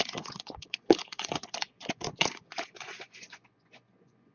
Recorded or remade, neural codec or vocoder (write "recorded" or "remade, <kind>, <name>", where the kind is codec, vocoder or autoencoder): remade, vocoder, Vocos